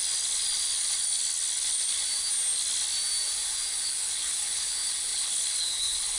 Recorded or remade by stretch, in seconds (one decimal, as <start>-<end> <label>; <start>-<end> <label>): 0.0-3.7 recorded; 3.7-6.2 remade